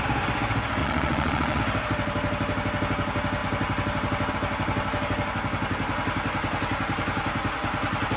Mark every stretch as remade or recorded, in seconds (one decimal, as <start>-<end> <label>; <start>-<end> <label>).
0.0-0.8 recorded; 0.8-1.6 remade; 1.6-8.2 recorded